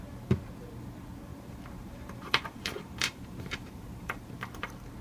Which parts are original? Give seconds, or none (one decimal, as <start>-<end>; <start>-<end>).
0.0-1.3; 4.3-5.0